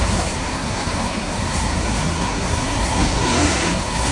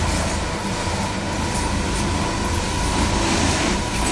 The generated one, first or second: first